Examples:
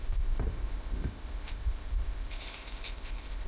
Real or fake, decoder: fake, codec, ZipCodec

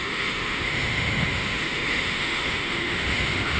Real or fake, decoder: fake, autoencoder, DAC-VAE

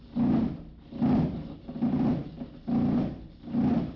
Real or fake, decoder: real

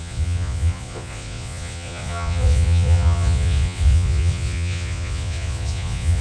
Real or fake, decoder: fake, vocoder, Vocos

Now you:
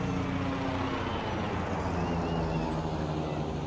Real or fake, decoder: real